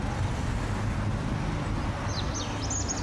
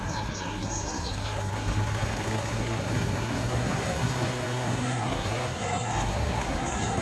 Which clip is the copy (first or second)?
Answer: second